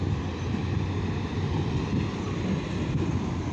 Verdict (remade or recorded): recorded